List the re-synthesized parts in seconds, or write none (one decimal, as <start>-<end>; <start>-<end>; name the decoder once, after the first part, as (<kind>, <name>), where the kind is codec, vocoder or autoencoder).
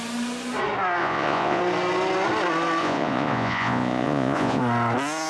1.0-1.6 (vocoder, Vocos); 2.8-4.6